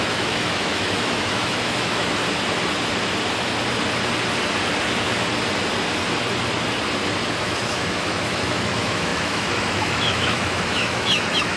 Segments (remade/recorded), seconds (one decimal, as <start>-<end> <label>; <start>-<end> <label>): 0.0-2.2 remade; 2.2-7.4 recorded; 7.4-11.6 remade